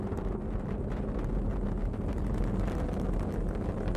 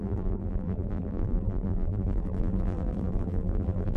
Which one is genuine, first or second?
first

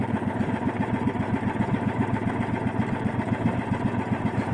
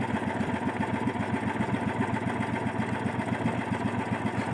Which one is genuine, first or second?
second